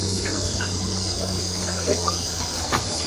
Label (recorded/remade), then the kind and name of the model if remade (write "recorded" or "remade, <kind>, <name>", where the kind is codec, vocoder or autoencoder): remade, codec, SNAC